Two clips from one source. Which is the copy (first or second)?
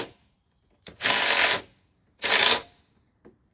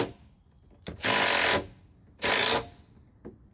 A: first